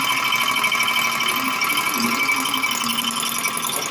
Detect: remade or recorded recorded